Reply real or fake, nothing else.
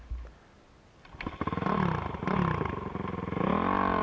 real